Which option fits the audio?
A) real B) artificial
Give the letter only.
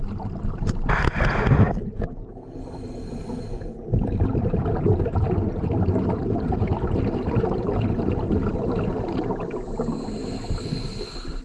A